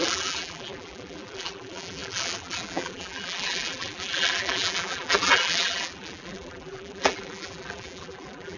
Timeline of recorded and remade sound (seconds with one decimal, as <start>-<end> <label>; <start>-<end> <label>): 0.0-8.6 remade